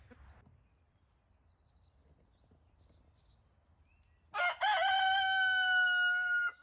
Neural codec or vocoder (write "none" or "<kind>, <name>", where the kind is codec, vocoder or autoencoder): none